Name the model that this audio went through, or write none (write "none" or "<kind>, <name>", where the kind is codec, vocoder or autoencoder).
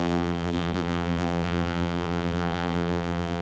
vocoder, BigVGAN v2